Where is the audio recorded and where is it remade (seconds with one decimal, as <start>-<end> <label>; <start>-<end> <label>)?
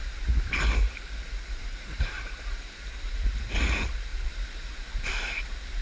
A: 0.0-3.5 remade; 3.5-5.8 recorded